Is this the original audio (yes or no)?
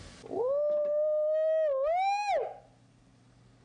yes